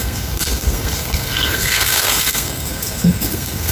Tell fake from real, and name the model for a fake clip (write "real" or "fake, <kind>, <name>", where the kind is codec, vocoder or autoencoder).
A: fake, codec, SNAC